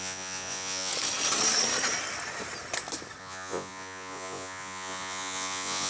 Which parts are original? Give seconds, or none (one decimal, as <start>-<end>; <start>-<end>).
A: 0.9-3.2